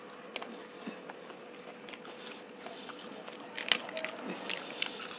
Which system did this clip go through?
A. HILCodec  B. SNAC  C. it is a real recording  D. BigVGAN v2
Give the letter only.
C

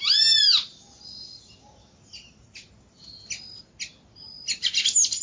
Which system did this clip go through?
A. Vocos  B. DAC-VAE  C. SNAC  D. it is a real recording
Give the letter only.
D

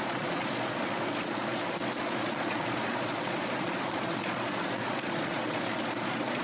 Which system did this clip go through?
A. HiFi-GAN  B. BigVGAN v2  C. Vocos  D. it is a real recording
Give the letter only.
C